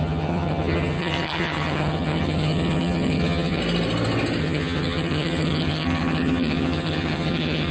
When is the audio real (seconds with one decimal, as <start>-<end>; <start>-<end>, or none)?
3.6-4.4